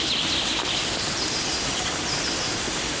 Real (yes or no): yes